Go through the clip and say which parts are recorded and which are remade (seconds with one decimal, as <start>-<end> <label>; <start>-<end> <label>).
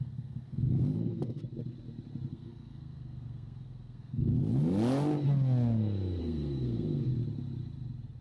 0.0-1.4 remade; 1.4-2.3 recorded; 2.3-4.5 remade; 4.5-6.2 recorded; 6.2-7.1 remade; 7.1-8.2 recorded